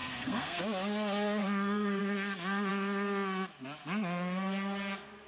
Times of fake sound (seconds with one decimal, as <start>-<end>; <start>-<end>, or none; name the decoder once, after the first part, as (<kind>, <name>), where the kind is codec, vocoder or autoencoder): 0.0-0.6 (codec, SNAC); 1.4-2.0